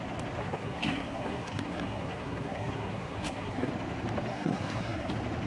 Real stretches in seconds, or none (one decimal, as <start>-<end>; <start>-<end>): 0.0-0.4; 3.7-4.3; 5.1-5.5